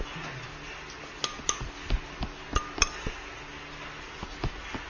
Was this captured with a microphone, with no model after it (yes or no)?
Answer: yes